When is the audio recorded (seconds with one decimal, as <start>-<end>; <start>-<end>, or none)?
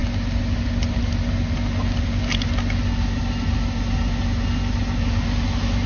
0.0-5.9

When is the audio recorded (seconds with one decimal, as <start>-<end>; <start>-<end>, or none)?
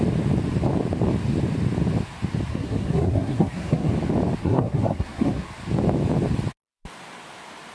0.0-2.5; 3.9-4.4; 5.5-7.7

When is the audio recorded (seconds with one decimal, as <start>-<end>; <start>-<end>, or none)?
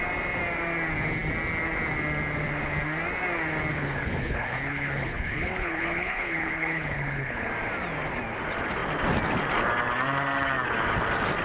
0.0-3.7; 7.5-11.4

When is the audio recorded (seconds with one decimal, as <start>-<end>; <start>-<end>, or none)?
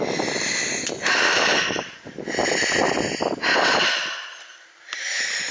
0.0-5.5